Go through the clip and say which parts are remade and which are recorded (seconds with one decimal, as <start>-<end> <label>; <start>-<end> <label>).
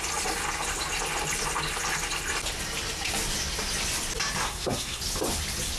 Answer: 0.0-4.4 recorded; 4.4-5.0 remade; 5.0-5.8 recorded